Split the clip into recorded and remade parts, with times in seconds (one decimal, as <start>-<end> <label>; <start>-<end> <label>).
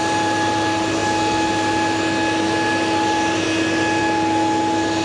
0.0-5.0 recorded